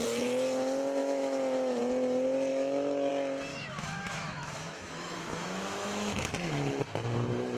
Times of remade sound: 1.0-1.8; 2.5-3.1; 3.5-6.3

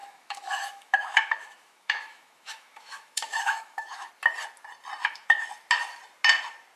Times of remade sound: 0.0-4.1; 5.0-5.5

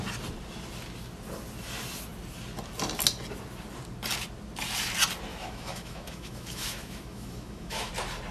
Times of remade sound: 5.3-7.9

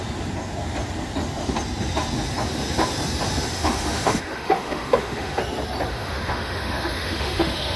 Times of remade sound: 3.5-5.4; 5.9-7.8

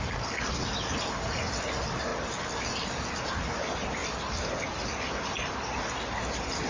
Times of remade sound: none